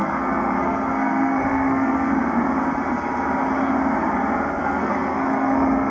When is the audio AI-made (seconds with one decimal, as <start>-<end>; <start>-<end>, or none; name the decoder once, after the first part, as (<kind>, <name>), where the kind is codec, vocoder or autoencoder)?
0.0-2.1 (codec, SNAC); 4.6-5.9